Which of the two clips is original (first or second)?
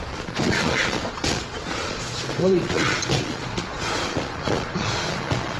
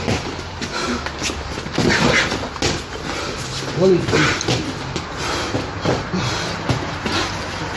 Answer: second